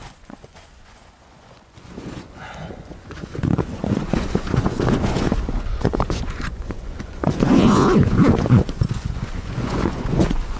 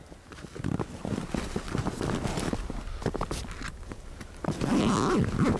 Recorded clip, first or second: second